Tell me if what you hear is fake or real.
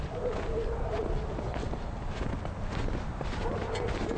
real